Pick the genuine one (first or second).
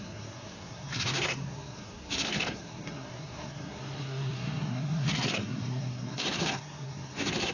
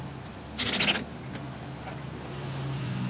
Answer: second